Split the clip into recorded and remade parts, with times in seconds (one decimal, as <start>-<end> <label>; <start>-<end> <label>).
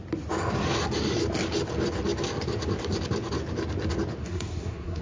0.0-4.2 recorded; 4.2-5.0 remade